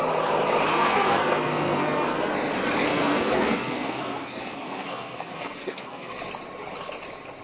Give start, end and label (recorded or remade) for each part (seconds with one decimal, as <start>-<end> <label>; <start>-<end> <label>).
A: 0.0-0.7 recorded; 0.7-2.3 remade; 2.3-2.9 recorded; 2.9-6.1 remade; 6.1-7.4 recorded